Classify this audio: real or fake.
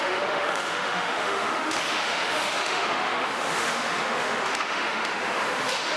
fake